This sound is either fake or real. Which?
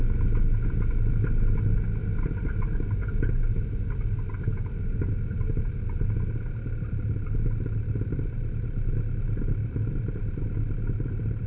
real